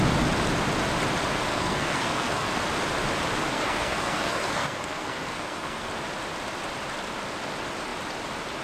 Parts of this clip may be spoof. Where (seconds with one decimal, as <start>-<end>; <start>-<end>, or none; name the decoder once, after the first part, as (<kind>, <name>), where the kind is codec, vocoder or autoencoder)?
1.5-2.6 (codec, SNAC); 3.5-5.9